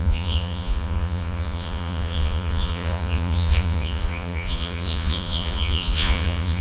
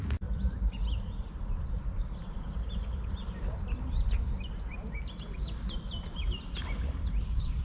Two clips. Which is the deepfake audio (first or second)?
first